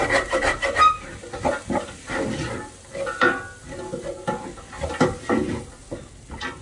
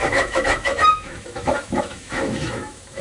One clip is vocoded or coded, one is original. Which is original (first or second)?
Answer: first